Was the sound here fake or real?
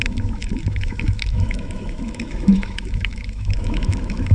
fake